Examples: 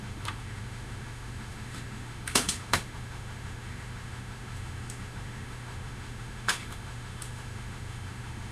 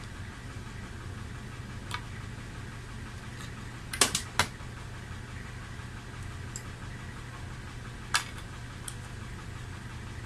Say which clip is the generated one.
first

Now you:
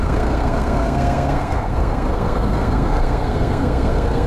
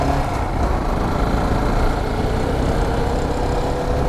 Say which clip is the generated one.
first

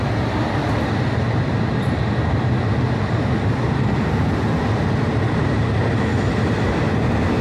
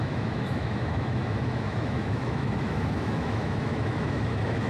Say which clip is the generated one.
second